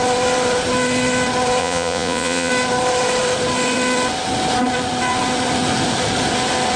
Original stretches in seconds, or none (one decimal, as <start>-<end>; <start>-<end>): 0.0-1.6; 2.5-6.8